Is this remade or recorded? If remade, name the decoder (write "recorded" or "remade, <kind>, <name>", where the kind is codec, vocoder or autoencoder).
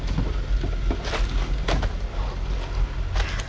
recorded